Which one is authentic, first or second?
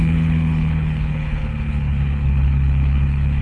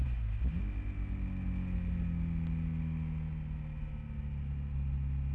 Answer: second